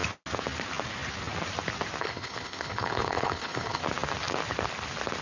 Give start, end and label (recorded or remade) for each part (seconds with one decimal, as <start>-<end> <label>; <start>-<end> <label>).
0.0-2.0 recorded; 2.0-3.8 remade; 3.8-5.2 recorded